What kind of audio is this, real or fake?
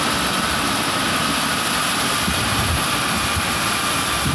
real